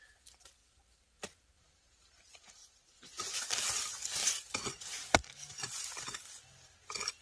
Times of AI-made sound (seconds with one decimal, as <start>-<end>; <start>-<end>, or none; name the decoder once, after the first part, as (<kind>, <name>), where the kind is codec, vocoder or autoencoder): 2.6-3.5 (vocoder, Vocos)